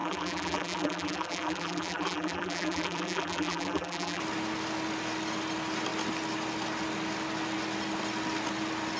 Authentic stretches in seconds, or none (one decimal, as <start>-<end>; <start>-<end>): 4.2-9.0